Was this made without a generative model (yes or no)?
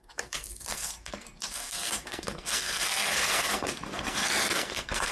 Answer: no